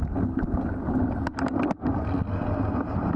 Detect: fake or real real